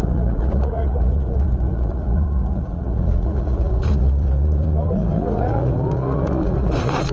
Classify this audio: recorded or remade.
remade